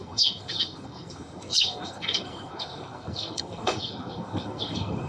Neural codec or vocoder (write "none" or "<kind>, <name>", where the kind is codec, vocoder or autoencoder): codec, SNAC